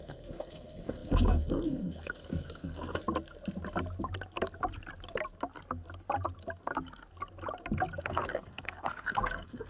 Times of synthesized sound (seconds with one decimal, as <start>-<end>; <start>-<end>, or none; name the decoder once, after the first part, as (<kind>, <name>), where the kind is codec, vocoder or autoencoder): 0.0-3.0 (codec, SNAC); 8.0-9.7